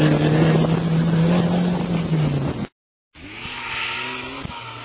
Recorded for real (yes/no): yes